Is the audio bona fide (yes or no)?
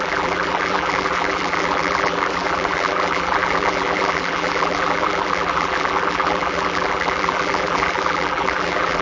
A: no